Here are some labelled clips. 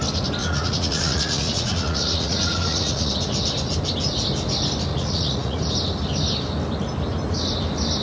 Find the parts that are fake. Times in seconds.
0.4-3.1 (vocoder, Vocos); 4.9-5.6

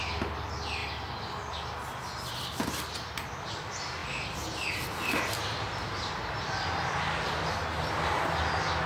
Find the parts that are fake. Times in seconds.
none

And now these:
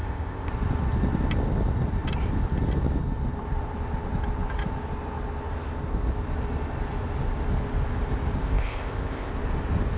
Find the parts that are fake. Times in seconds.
0.0-0.5 (codec, ZipCodec); 8.4-9.3

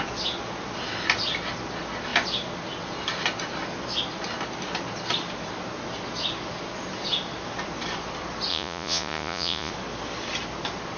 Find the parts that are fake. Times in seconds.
8.5-9.7 (vocoder, Vocos)

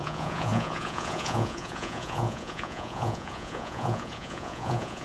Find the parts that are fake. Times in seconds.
0.0-5.0 (vocoder, Vocos)

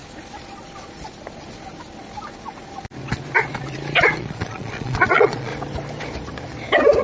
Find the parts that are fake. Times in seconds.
4.2-5.5 (vocoder, Vocos)

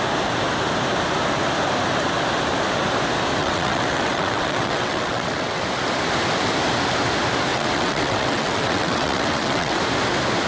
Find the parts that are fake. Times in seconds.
3.4-5.6 (vocoder, WaveNeXt); 7.5-9.8